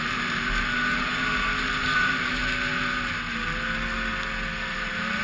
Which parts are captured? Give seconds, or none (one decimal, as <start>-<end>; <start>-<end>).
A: 2.4-4.6